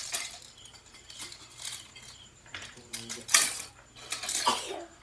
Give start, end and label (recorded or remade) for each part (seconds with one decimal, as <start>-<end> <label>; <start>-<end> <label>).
0.0-0.7 recorded; 0.7-3.7 remade; 3.7-5.0 recorded